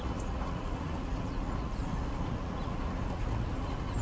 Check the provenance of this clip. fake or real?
fake